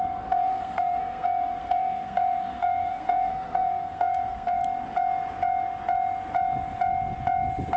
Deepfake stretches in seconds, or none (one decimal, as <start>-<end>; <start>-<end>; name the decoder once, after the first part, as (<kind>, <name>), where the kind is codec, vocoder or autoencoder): 0.0-4.6 (codec, SNAC)